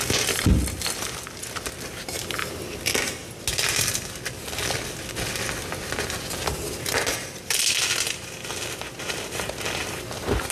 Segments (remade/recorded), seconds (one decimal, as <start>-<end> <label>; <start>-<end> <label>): 0.0-10.5 recorded